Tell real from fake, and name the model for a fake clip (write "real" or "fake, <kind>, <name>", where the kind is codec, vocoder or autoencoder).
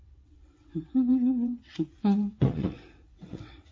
fake, vocoder, WaveNeXt